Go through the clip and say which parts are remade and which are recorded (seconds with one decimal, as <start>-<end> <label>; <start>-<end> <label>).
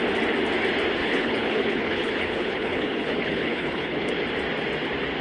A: 0.0-1.0 recorded; 1.0-4.1 remade; 4.1-5.2 recorded